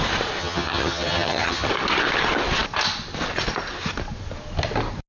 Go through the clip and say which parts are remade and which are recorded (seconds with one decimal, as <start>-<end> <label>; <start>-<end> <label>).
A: 0.0-0.4 recorded; 0.4-1.7 remade; 1.7-5.1 recorded